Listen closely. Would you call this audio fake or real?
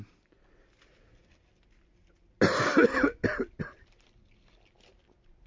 real